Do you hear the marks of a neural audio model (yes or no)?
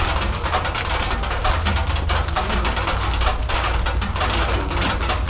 no